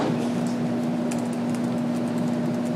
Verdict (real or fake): real